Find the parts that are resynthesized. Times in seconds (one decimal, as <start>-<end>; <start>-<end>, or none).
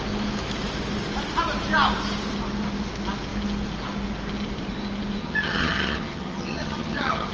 5.2-7.3